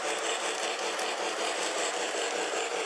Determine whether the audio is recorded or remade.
recorded